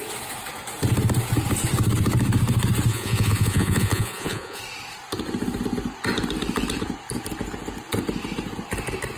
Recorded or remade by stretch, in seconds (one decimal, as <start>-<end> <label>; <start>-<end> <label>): 0.0-2.9 recorded; 2.9-4.6 remade; 4.6-9.2 recorded